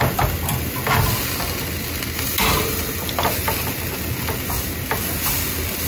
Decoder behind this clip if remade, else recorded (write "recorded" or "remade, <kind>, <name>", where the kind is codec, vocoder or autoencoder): recorded